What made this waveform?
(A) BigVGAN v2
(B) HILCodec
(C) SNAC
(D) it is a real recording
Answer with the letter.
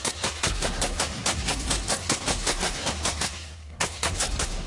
C